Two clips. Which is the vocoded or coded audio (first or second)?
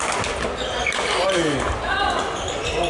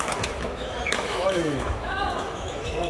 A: second